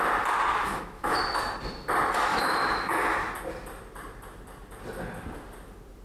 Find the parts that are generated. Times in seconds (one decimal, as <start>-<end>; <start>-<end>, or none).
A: 0.5-1.2; 2.3-3.0